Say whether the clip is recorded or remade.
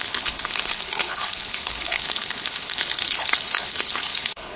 remade